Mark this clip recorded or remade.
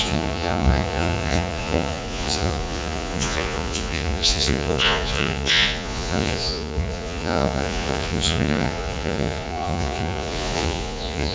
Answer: remade